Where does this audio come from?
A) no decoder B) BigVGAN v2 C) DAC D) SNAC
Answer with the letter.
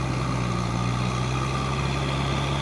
A